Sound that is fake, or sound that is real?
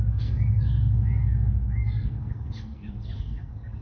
fake